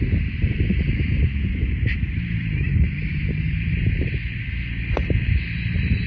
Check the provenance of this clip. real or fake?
fake